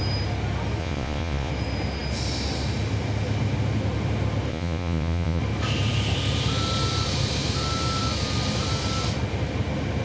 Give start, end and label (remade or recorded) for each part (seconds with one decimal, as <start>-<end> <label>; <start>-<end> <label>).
0.0-0.8 recorded; 0.8-1.5 remade; 1.5-4.5 recorded; 4.5-5.4 remade; 5.4-10.0 recorded